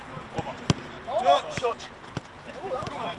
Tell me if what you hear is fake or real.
fake